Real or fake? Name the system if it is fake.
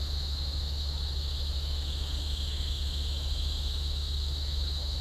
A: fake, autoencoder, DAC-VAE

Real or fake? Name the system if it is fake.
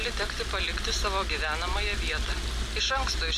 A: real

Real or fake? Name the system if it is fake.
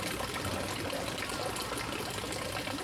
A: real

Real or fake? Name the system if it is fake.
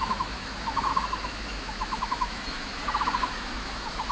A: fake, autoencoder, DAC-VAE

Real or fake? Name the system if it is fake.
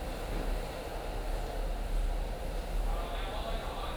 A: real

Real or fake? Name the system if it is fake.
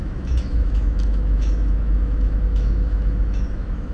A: fake, autoencoder, DAC-VAE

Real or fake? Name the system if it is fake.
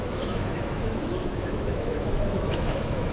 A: fake, autoencoder, DAC-VAE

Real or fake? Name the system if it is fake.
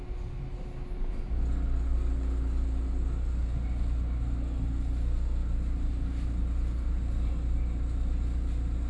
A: real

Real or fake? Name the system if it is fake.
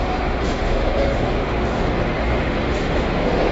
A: fake, autoencoder, DAC-VAE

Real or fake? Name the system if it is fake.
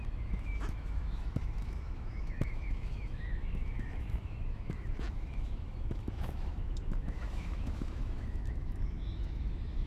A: fake, autoencoder, DAC-VAE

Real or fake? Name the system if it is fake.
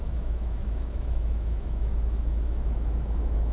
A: fake, autoencoder, DAC-VAE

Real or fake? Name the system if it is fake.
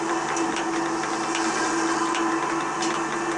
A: real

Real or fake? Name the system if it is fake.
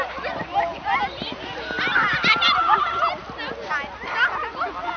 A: real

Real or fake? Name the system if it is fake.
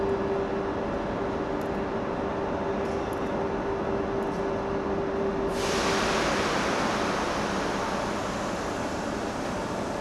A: real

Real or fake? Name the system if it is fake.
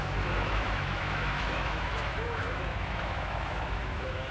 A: fake, autoencoder, DAC-VAE